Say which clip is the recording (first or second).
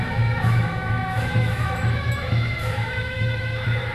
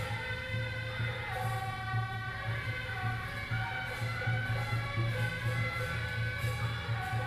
second